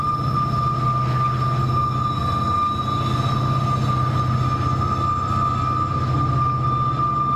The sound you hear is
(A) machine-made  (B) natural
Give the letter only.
B